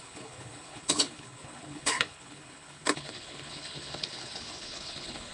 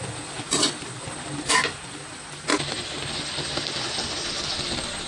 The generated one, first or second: first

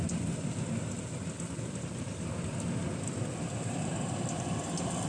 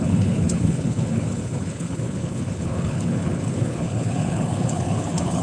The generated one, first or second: second